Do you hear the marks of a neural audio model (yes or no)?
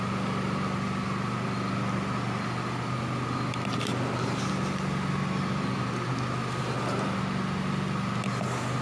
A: no